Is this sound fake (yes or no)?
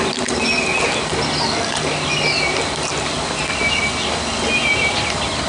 no